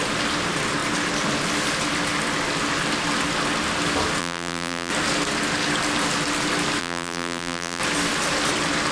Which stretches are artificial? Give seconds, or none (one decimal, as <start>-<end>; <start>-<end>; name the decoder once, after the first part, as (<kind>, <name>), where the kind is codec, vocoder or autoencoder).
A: 4.2-4.9 (vocoder, BigVGAN v2); 6.8-7.8